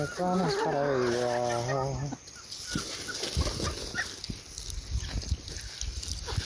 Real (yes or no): yes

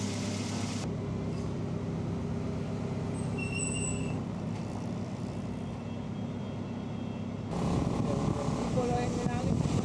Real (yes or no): yes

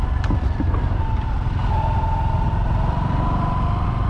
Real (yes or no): yes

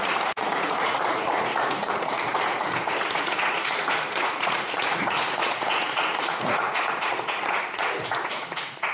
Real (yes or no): no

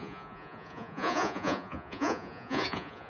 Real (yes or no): no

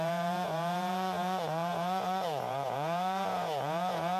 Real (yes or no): no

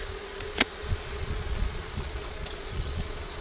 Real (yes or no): no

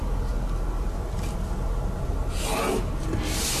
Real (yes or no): yes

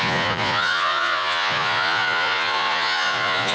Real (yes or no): no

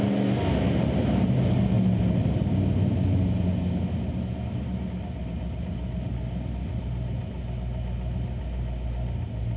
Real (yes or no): yes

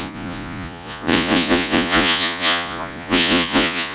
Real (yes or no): no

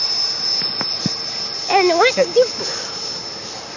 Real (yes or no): yes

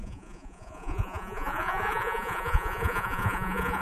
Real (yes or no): no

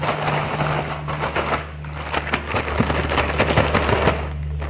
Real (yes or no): yes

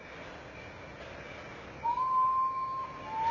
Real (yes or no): yes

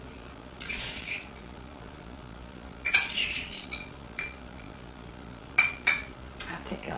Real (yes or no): no